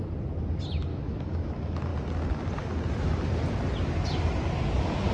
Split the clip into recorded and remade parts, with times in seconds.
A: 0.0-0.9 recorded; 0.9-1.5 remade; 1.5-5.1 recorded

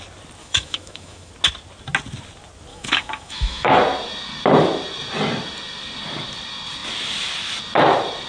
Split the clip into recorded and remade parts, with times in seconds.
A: 0.0-0.4 recorded; 0.4-1.3 remade; 1.3-2.7 recorded; 2.7-3.7 remade; 3.7-8.3 recorded